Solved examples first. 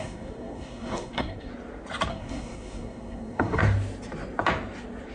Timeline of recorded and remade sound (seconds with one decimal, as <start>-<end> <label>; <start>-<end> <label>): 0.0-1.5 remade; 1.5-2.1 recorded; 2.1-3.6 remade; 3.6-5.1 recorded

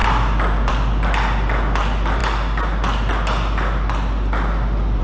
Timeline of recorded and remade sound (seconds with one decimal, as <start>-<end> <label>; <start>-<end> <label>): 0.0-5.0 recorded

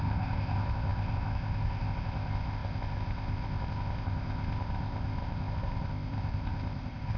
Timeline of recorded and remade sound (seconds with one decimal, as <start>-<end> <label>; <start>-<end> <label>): 0.0-7.2 remade

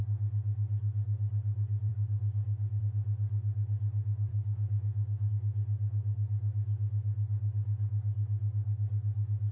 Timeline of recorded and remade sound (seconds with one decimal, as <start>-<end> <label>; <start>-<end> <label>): 0.0-1.9 recorded; 1.9-2.8 remade; 2.8-4.3 recorded; 4.3-5.3 remade; 5.3-9.5 recorded